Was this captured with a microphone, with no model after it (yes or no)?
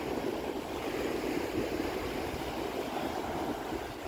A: yes